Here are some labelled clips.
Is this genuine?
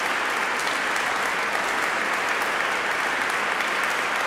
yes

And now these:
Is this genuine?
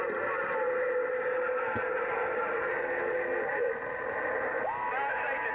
yes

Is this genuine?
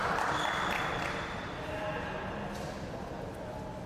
yes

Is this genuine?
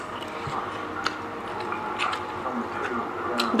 yes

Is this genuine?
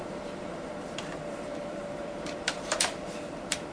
no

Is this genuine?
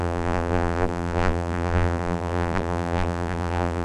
no